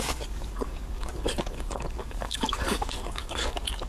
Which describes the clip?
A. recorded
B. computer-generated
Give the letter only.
B